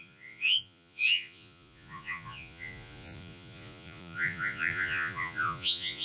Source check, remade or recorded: remade